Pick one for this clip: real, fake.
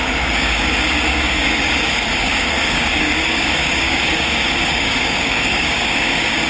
fake